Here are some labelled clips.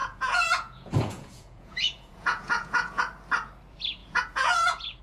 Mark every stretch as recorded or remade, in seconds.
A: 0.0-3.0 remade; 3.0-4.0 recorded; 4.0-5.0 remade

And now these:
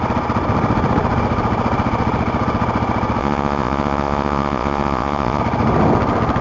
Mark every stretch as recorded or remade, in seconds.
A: 0.0-3.2 recorded; 3.2-5.4 remade; 5.4-6.4 recorded

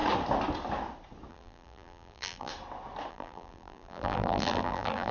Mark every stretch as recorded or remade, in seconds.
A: 0.0-1.3 recorded; 1.3-2.5 remade; 2.5-3.1 recorded; 3.1-5.1 remade

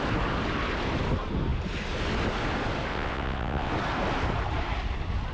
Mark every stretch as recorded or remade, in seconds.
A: 0.0-2.9 recorded; 2.9-3.7 remade; 3.7-5.3 recorded

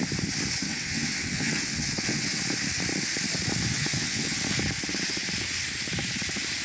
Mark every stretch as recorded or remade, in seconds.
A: 0.0-0.7 recorded; 0.7-2.4 remade; 2.4-3.7 recorded; 3.7-4.4 remade; 4.4-6.6 recorded